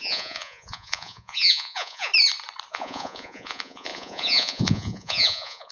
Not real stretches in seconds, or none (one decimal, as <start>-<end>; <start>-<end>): 0.0-2.1; 2.7-5.7